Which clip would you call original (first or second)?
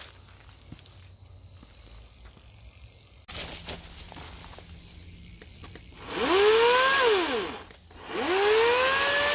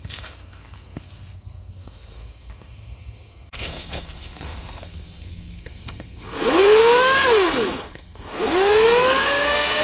first